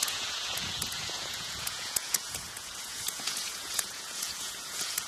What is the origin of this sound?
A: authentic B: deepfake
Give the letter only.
B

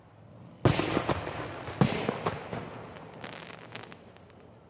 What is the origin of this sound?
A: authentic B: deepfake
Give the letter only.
A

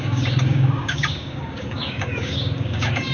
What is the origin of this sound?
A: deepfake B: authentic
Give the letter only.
A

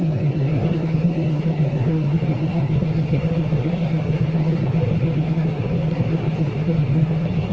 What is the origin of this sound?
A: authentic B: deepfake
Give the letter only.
B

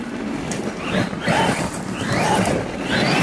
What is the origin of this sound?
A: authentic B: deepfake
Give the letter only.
A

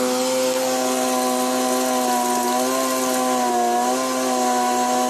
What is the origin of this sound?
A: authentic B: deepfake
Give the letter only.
A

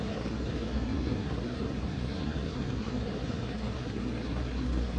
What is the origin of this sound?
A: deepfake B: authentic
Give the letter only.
A